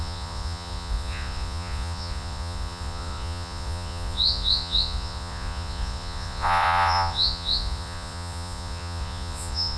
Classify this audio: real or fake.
fake